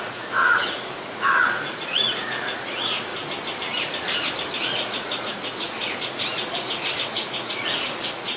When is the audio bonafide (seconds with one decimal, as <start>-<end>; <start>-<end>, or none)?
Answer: 3.1-4.6

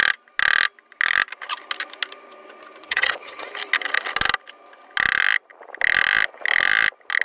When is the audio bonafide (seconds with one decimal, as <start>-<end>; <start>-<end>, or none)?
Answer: 0.0-2.8; 3.5-7.2